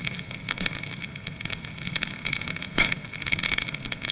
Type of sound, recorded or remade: remade